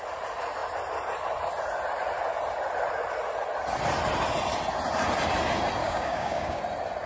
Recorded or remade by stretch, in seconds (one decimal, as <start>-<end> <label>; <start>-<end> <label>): 0.0-5.8 recorded; 5.8-6.6 remade; 6.6-7.1 recorded